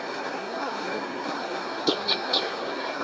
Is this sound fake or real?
fake